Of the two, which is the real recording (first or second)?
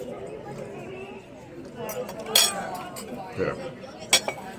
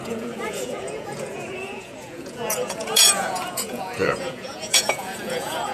first